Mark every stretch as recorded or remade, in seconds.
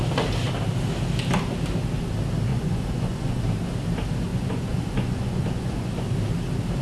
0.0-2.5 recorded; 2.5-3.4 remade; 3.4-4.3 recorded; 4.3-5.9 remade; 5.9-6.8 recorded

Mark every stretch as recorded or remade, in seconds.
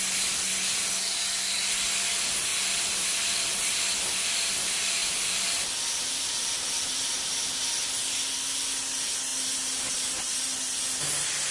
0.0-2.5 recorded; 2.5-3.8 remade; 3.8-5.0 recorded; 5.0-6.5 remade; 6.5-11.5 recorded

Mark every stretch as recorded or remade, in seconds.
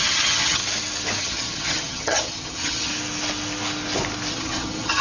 0.0-0.6 remade; 0.6-1.2 recorded; 1.2-2.9 remade; 2.9-4.3 recorded; 4.3-5.0 remade